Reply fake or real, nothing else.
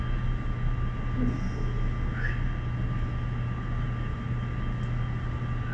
real